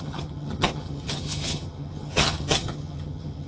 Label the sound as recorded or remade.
remade